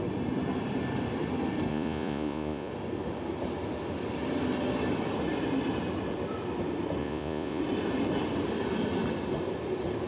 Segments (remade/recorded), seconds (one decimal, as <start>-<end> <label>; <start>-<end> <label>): 0.0-1.7 recorded; 1.7-2.7 remade; 2.7-7.0 recorded; 7.0-7.6 remade; 7.6-10.1 recorded